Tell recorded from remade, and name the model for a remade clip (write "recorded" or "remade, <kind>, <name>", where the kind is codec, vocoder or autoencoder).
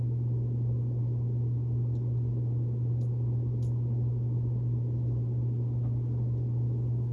recorded